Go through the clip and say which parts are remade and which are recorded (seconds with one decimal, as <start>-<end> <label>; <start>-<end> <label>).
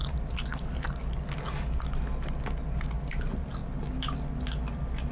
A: 0.0-5.1 recorded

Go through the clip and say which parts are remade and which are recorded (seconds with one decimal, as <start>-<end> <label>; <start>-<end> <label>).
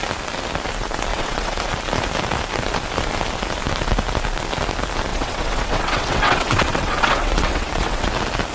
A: 0.0-1.1 recorded; 1.1-1.6 remade; 1.6-5.1 recorded; 5.1-8.1 remade; 8.1-8.5 recorded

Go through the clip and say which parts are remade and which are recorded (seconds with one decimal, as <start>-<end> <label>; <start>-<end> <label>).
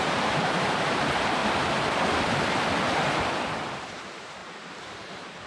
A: 0.0-1.4 remade; 1.4-3.8 recorded; 3.8-5.5 remade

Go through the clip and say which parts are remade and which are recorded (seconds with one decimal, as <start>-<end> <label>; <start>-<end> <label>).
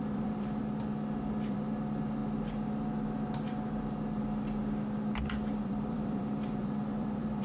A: 0.0-0.6 remade; 0.6-1.5 recorded; 1.5-2.2 remade; 2.2-5.6 recorded; 5.6-7.4 remade